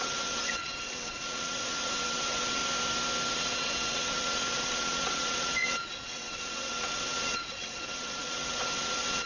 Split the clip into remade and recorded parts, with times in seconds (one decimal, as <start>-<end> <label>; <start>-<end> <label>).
0.0-2.6 remade; 2.6-3.3 recorded; 3.3-9.3 remade